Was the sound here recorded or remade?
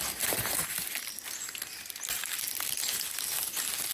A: recorded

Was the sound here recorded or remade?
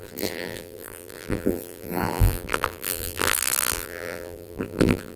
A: remade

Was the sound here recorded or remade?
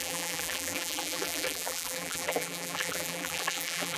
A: remade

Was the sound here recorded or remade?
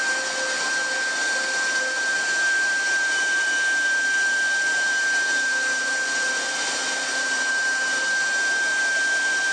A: recorded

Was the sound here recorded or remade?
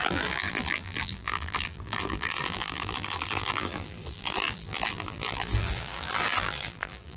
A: remade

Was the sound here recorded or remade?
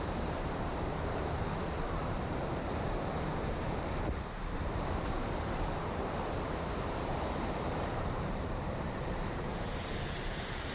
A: remade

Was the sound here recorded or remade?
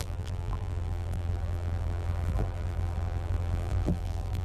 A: remade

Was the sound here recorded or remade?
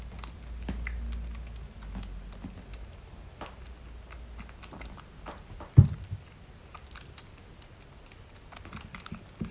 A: recorded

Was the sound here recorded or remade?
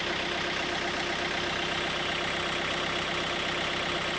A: recorded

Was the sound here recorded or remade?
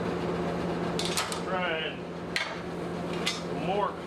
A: recorded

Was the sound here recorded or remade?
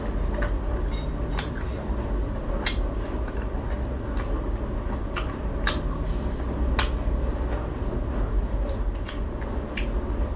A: recorded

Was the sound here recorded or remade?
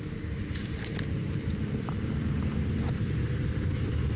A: remade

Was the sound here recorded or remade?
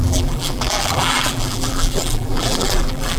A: remade